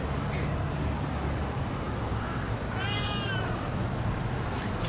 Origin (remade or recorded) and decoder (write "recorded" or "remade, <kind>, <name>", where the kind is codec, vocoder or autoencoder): recorded